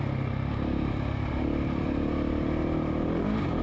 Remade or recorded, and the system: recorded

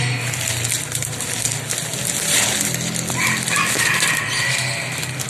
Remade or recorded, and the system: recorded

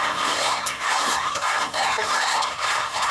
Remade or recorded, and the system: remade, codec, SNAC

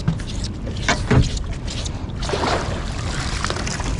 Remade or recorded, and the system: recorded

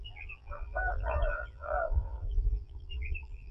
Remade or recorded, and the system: remade, vocoder, BigVGAN v2